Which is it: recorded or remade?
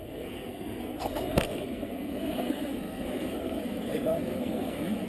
remade